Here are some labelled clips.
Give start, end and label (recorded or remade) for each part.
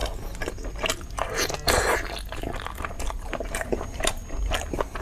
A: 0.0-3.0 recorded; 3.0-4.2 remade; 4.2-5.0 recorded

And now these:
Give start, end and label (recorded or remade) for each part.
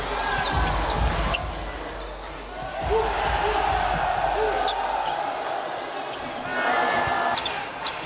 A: 0.0-8.1 recorded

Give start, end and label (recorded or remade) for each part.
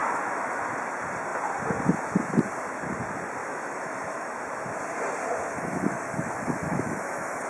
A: 0.0-0.6 remade; 0.6-3.4 recorded; 3.4-4.4 remade; 4.4-5.5 recorded; 5.5-7.5 remade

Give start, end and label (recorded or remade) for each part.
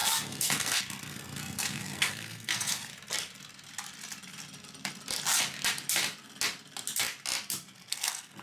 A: 0.0-2.9 remade; 2.9-7.9 recorded; 7.9-8.4 remade